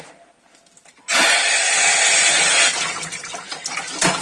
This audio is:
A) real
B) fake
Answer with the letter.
B